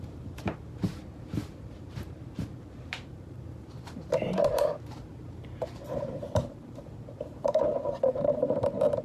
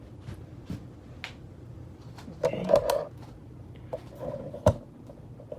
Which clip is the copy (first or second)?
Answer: first